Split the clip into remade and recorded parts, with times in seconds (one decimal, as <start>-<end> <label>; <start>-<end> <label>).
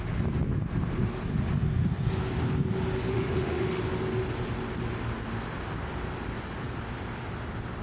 0.0-3.1 recorded; 3.1-3.8 remade; 3.8-7.8 recorded